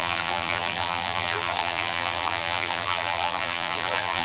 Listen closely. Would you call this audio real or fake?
fake